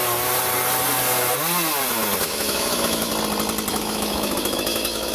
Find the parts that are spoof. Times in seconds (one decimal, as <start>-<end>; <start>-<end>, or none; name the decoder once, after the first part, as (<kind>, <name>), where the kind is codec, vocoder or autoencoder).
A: 2.2-3.1 (autoencoder, DAC-VAE); 3.7-5.1